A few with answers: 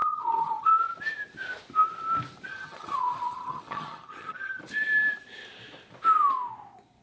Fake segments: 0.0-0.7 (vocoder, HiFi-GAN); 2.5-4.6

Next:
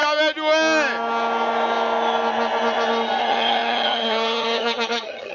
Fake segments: 3.2-5.3 (vocoder, HiFi-GAN)

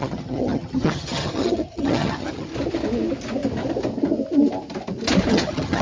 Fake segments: 0.0-2.5 (vocoder, HiFi-GAN); 5.3-5.8

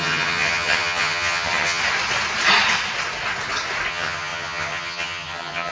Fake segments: 0.0-1.8 (vocoder, HiFi-GAN); 3.9-5.7

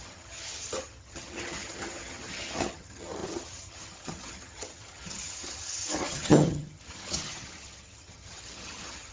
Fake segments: 0.0-9.1 (vocoder, HiFi-GAN)

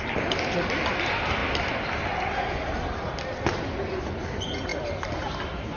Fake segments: none

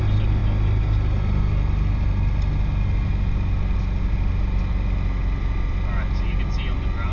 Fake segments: none

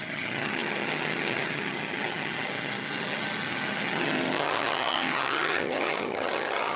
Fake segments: 0.0-6.8 (vocoder, HiFi-GAN)